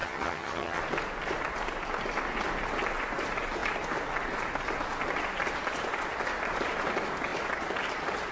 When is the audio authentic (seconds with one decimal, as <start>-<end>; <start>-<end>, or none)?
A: 0.8-8.3